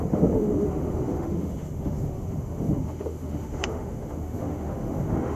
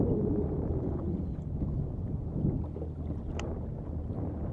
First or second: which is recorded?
second